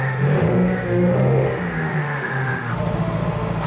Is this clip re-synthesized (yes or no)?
yes